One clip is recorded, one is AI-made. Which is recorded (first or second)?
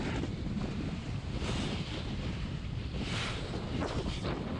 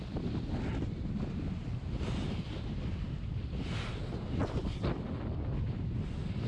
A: second